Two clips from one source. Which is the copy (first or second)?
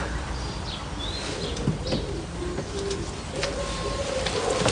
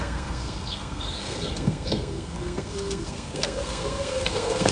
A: second